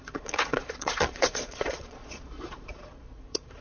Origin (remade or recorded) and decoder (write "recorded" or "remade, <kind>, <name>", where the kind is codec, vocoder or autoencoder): remade, vocoder, Vocos